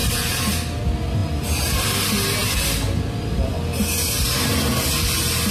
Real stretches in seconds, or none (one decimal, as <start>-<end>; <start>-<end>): 0.5-2.4; 3.5-5.5